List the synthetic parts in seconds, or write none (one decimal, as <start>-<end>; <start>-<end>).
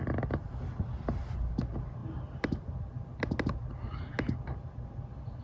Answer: none